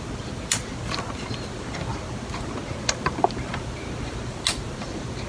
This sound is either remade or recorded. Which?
recorded